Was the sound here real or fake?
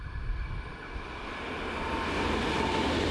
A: real